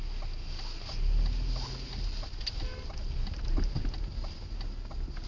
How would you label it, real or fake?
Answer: real